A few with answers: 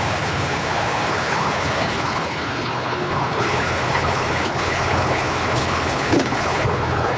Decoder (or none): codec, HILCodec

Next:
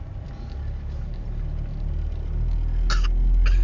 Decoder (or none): none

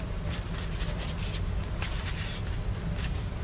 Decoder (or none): none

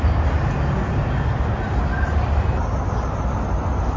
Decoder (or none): none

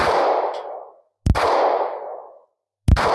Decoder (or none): none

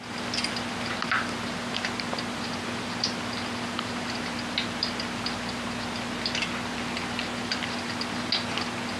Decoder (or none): none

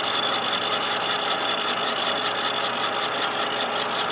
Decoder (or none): none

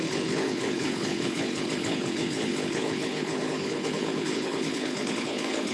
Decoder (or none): codec, HILCodec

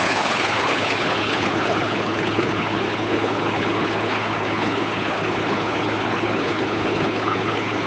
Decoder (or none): codec, HILCodec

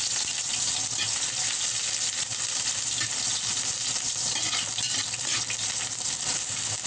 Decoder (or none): none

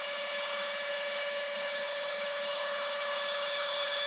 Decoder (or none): codec, HILCodec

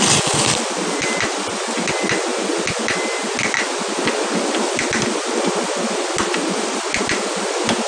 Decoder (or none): none